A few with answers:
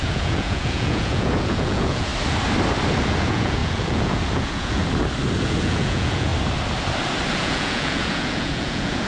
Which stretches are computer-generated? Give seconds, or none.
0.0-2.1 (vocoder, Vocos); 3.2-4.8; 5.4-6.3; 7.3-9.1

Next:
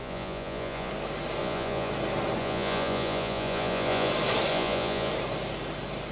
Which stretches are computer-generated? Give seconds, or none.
0.0-0.9 (vocoder, Vocos); 1.4-1.9; 2.4-4.1; 4.5-5.1

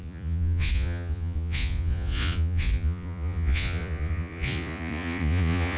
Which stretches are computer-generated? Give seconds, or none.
0.0-5.8 (vocoder, Vocos)

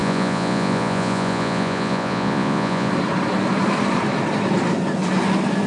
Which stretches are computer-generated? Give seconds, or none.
0.0-2.9 (vocoder, Vocos)

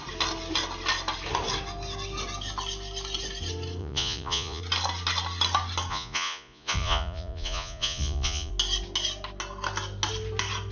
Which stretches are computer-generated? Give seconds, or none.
3.8-4.6 (vocoder, Vocos); 5.9-8.5

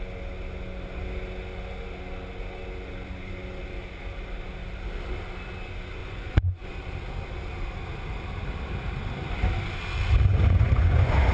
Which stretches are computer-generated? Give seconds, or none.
6.0-6.7 (vocoder, Vocos); 10.3-11.3

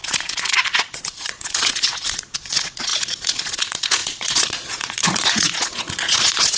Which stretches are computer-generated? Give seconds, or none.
0.0-6.6 (vocoder, Vocos)